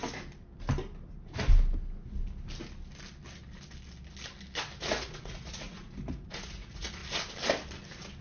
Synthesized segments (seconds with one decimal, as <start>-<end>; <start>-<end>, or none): 4.8-7.0